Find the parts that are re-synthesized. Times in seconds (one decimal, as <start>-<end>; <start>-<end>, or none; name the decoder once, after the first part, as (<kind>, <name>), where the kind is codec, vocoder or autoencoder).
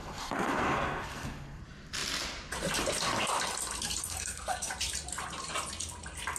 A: 0.0-1.6 (codec, SNAC); 4.0-4.7